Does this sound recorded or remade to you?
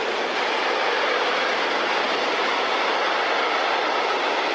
recorded